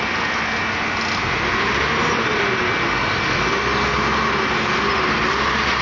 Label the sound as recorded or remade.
recorded